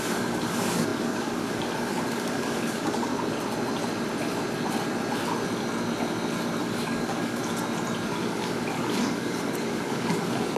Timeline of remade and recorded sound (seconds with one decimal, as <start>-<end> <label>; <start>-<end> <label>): 0.0-3.1 remade; 3.1-6.6 recorded; 6.6-7.4 remade; 7.4-8.2 recorded; 8.2-10.6 remade